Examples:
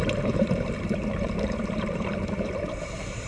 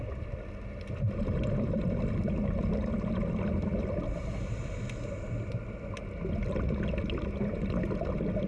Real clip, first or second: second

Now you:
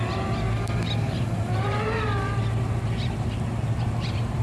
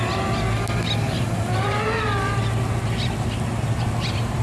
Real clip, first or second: second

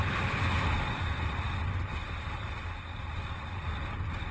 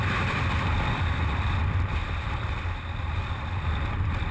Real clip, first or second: first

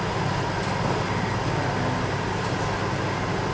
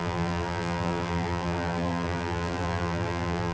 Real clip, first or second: first